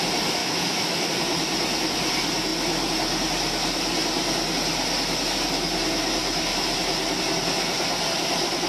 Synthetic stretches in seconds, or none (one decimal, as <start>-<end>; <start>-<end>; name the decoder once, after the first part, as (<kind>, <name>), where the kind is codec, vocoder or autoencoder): 0.4-1.1 (autoencoder, DAC-VAE)